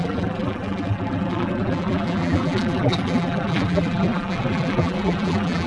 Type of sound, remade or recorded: remade